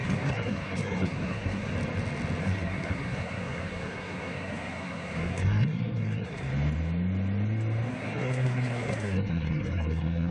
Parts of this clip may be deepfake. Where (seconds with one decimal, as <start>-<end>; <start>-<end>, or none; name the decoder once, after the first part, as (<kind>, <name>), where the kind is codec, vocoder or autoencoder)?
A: 0.0-1.7 (codec, SNAC); 2.4-6.5; 7.9-10.3